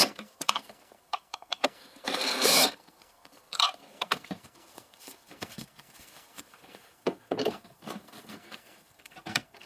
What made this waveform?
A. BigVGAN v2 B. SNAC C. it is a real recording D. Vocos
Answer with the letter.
B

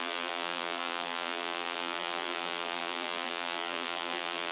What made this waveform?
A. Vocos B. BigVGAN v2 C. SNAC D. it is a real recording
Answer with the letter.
B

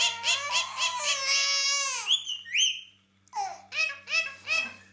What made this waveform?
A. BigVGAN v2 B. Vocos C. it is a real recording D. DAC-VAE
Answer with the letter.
C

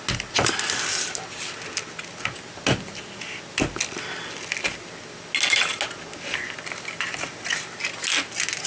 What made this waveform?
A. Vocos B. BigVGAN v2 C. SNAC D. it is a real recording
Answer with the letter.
D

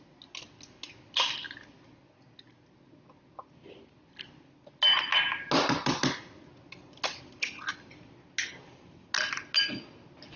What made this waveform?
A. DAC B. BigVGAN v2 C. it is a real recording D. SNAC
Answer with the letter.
C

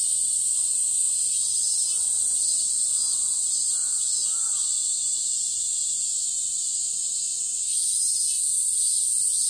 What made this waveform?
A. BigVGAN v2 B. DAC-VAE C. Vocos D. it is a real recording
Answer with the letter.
D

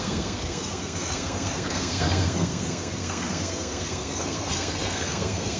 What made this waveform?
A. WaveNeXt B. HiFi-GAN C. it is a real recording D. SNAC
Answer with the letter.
D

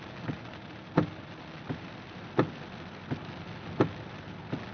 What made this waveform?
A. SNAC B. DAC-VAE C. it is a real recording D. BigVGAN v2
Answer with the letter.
C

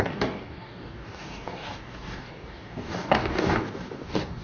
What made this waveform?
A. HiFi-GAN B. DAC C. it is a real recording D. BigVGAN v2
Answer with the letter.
B